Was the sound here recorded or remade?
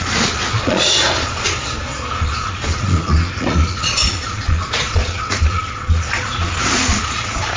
remade